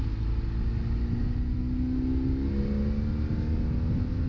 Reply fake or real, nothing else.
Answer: real